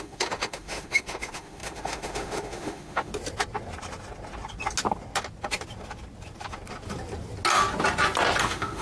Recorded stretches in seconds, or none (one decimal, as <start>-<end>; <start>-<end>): 3.1-8.4